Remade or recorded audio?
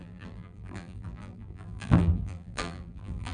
remade